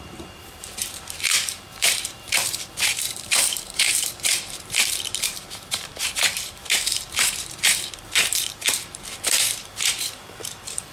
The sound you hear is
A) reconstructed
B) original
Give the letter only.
A